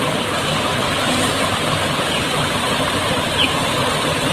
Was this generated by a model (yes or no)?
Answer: no